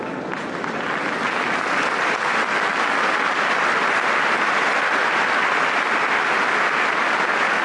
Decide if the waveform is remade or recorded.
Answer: recorded